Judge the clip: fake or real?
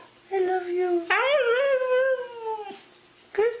real